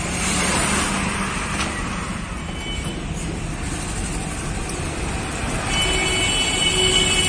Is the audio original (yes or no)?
yes